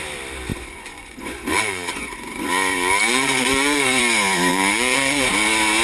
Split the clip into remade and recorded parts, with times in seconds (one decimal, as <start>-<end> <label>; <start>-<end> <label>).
0.0-0.5 recorded; 0.5-4.0 remade; 4.0-4.5 recorded; 4.5-5.3 remade; 5.3-5.8 recorded